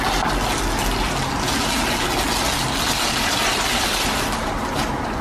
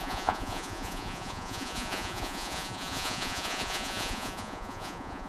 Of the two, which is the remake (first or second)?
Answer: second